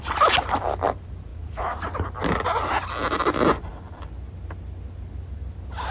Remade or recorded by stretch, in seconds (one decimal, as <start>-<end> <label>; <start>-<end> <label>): 0.0-1.3 recorded; 1.3-1.8 remade; 1.8-5.9 recorded

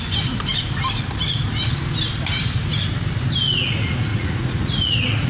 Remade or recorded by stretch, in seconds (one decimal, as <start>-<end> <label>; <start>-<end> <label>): 0.0-4.1 recorded; 4.1-5.3 remade

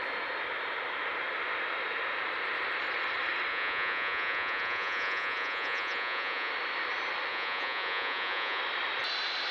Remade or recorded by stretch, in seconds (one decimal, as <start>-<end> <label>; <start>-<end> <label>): 0.0-3.5 recorded; 3.5-6.5 remade; 6.5-7.3 recorded; 7.3-8.6 remade; 8.6-9.5 recorded

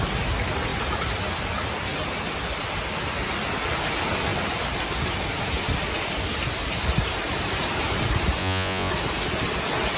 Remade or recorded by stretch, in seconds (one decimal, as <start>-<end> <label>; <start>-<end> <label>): 0.0-8.4 recorded; 8.4-8.9 remade; 8.9-10.0 recorded

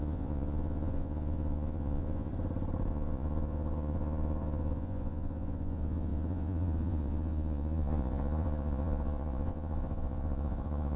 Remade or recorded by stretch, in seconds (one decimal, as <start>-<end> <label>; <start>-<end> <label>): 0.0-2.3 remade; 2.3-2.9 recorded; 2.9-11.0 remade

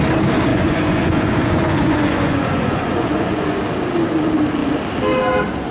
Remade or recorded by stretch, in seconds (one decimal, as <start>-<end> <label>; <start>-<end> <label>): 0.0-0.5 recorded; 0.5-3.6 remade; 3.6-5.7 recorded

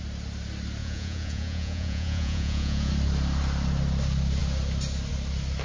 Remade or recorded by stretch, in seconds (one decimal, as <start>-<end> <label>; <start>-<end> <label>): 0.0-0.8 recorded; 0.8-2.9 remade; 2.9-5.6 recorded